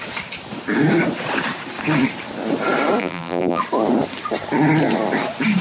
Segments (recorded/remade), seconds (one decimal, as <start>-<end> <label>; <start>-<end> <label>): 0.0-3.0 recorded; 3.0-3.6 remade; 3.6-5.6 recorded